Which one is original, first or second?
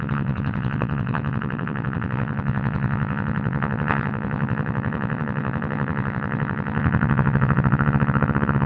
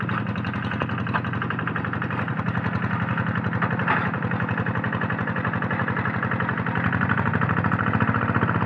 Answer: second